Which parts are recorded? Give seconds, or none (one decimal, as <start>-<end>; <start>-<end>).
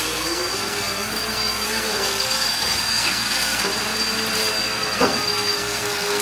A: 3.7-4.5